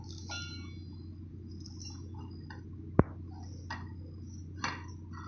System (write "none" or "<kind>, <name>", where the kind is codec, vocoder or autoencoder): none